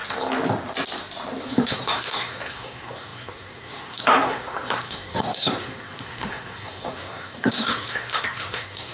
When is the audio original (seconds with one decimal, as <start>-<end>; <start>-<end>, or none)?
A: 0.0-1.4